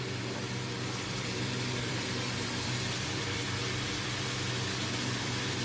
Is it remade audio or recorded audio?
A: remade